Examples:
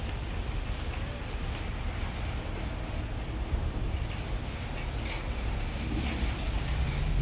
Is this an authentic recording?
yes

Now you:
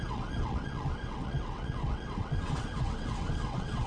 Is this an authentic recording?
no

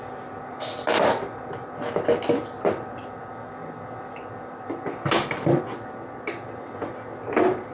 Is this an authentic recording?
yes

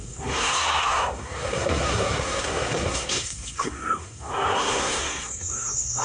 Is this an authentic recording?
no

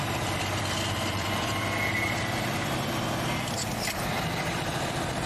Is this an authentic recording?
no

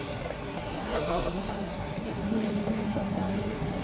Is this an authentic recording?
no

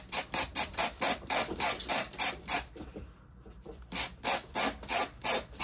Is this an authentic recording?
no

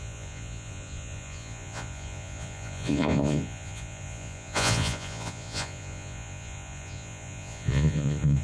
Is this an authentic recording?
no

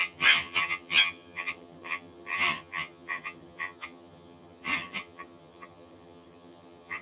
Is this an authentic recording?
no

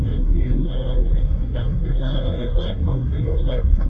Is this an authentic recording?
no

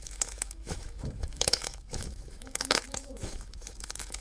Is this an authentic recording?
no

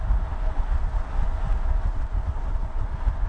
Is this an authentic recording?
yes